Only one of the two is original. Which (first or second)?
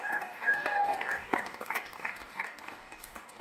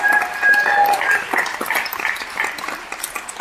second